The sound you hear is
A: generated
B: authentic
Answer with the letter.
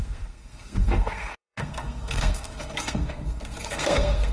A